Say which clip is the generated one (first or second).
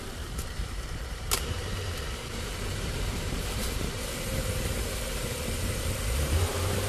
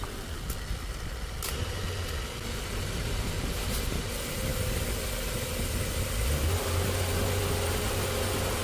first